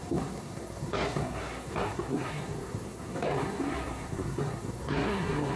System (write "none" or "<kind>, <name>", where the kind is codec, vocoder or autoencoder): codec, SNAC